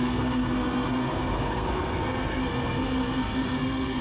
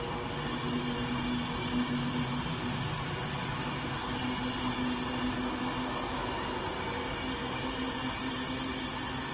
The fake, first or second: first